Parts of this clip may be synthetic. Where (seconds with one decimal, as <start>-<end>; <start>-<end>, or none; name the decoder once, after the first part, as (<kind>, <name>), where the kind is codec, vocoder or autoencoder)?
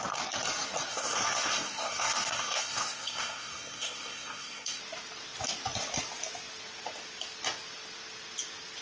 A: 0.9-4.8 (codec, SNAC)